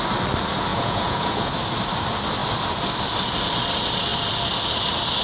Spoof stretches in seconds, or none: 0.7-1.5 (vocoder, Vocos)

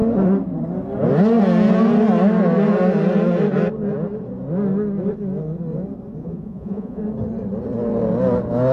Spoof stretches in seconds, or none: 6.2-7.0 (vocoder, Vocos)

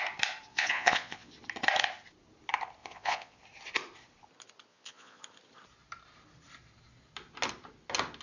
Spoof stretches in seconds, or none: 0.5-1.3 (vocoder, Vocos); 2.8-3.4; 4.7-5.2

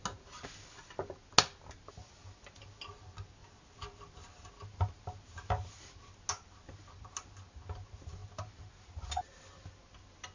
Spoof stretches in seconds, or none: none

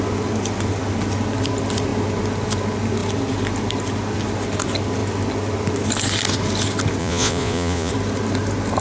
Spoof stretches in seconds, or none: 7.0-7.9 (vocoder, Vocos)

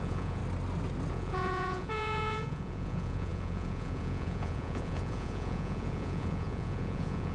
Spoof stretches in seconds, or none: 0.0-0.4 (vocoder, Vocos); 1.1-7.3

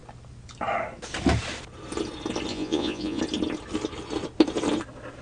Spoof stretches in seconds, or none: 2.5-3.2 (vocoder, Vocos)

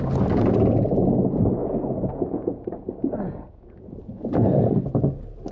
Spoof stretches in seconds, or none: 1.6-4.9 (vocoder, Vocos)